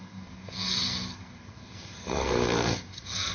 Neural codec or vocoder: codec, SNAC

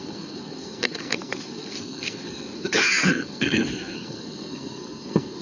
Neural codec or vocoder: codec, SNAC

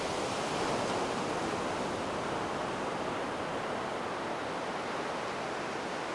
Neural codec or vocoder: none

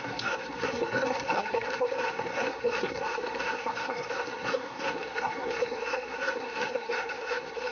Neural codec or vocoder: codec, SNAC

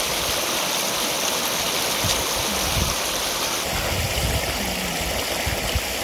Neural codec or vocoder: none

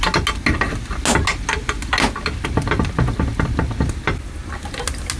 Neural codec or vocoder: none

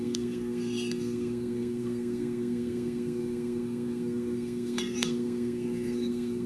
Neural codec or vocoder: codec, SNAC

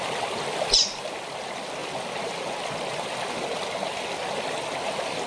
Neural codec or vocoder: none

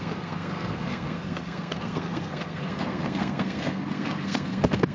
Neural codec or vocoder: codec, SNAC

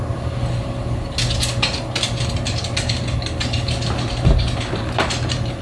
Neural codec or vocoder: none